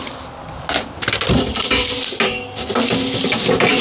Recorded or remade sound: recorded